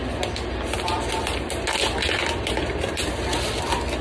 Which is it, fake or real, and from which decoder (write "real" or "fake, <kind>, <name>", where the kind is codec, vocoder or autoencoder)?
real